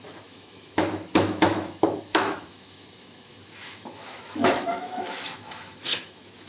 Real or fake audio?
fake